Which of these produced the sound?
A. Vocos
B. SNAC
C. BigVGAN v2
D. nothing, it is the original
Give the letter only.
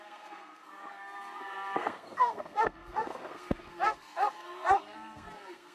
B